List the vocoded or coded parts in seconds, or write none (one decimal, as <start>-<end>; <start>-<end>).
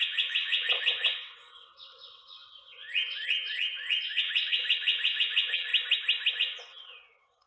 0.0-5.7; 6.3-7.5